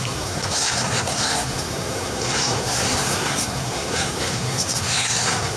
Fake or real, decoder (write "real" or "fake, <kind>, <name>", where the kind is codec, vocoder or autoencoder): fake, codec, SNAC